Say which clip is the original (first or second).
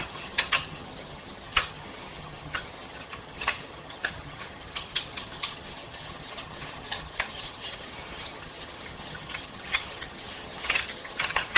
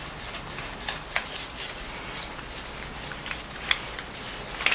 second